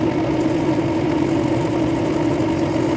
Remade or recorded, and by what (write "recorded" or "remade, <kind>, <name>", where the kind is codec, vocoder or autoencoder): recorded